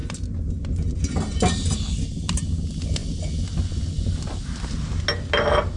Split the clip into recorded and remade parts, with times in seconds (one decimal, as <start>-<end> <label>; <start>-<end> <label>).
0.0-5.8 recorded